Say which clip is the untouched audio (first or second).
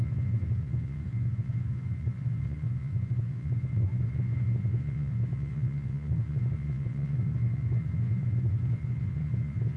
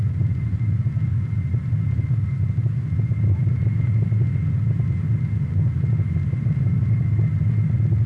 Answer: second